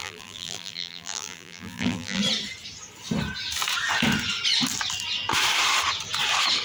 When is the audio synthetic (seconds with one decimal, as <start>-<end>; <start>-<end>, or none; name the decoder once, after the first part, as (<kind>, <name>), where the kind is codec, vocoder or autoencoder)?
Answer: 0.0-2.2 (vocoder, BigVGAN v2)